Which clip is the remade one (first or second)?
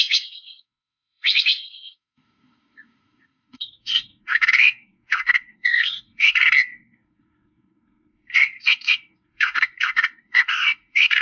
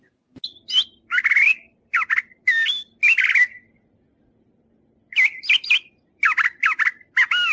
first